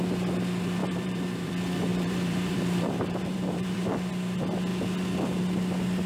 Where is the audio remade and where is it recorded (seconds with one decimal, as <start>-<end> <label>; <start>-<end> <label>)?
0.0-0.8 recorded; 0.8-1.5 remade; 1.5-1.9 recorded; 1.9-4.1 remade; 4.1-6.1 recorded